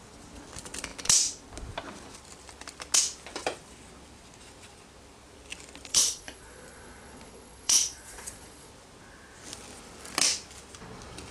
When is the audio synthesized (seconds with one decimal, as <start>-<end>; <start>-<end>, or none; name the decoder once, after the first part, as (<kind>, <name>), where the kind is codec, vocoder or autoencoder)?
5.9-8.7 (vocoder, Vocos)